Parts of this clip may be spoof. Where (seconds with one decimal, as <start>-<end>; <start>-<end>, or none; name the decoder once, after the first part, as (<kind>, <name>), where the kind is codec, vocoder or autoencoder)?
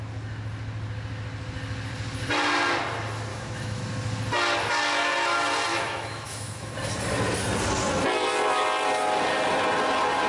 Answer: 3.3-3.8 (autoencoder, DAC-VAE); 5.7-6.7